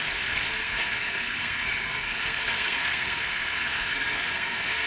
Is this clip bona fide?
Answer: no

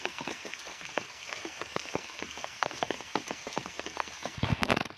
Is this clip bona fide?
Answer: no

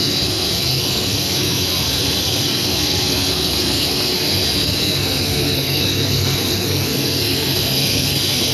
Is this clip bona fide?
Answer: no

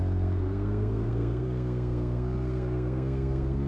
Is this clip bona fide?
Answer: no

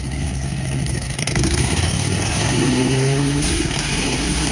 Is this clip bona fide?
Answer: no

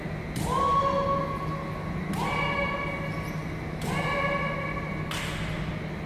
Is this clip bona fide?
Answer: yes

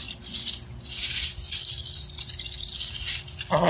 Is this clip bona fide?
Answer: yes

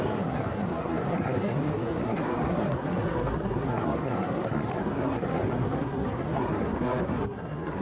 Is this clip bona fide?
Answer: no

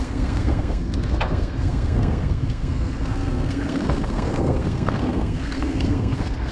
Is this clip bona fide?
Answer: no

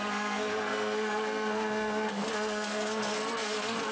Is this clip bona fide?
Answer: no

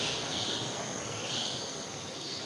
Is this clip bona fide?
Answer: no